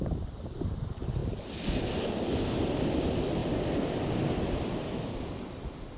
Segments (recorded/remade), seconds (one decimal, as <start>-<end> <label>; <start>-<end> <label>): 0.0-1.2 recorded; 1.2-1.9 remade; 1.9-6.0 recorded